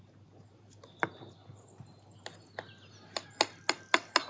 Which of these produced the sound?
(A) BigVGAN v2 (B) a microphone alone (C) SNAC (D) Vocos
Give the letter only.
B